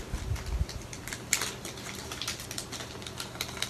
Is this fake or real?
real